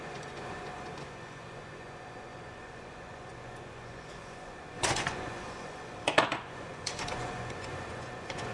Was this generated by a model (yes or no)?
yes